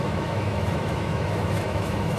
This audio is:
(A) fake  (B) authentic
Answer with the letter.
A